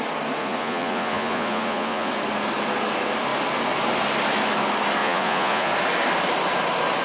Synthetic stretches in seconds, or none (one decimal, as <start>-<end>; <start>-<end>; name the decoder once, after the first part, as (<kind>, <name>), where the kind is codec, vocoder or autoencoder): 0.4-2.1 (vocoder, Vocos); 5.0-5.7